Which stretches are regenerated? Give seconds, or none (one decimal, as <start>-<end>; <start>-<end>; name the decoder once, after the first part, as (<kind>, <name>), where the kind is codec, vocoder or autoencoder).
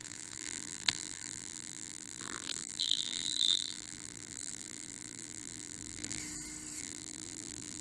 0.0-6.2 (vocoder, BigVGAN v2); 6.8-7.8